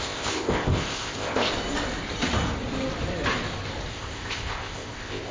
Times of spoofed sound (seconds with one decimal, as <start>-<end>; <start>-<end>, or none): 0.0-1.5; 3.9-5.3